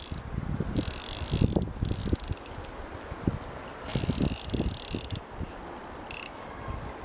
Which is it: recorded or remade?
recorded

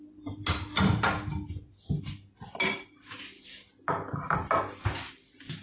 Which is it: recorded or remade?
recorded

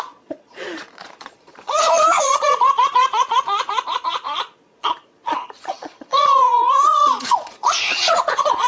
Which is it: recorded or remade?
remade